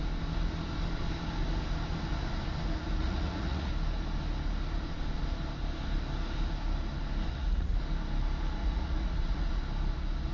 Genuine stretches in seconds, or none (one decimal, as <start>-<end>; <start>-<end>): 0.0-3.0; 3.7-7.3; 7.8-8.6; 9.6-10.3